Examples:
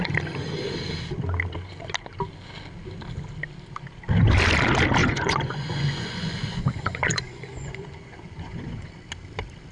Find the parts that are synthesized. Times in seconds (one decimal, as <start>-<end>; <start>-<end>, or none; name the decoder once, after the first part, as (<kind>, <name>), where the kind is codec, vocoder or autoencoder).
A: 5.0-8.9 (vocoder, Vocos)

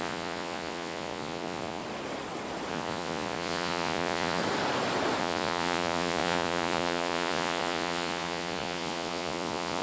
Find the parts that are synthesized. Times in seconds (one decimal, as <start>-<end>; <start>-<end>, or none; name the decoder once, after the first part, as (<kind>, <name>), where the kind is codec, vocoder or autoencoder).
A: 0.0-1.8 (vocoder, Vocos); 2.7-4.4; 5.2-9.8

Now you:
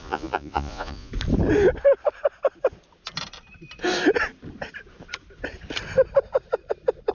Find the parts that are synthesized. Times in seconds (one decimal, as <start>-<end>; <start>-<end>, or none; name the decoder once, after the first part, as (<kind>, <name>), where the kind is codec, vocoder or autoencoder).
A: 0.0-1.1 (vocoder, Vocos)